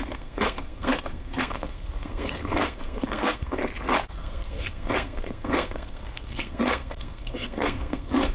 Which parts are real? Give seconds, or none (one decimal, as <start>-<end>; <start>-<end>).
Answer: 3.6-4.1